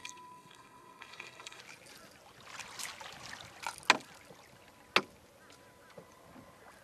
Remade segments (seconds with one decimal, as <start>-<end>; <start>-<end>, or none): 0.0-1.6